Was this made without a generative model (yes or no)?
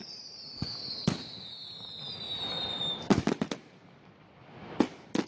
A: yes